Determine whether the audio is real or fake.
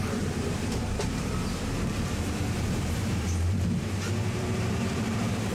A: fake